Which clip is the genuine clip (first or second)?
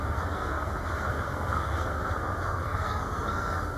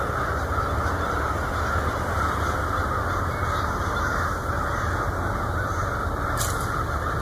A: second